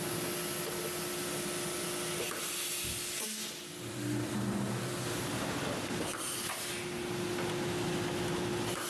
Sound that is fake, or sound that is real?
real